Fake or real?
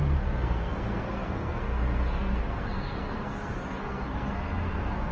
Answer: fake